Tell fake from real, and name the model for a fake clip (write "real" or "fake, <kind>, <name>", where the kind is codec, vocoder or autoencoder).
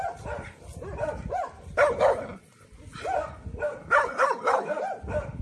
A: real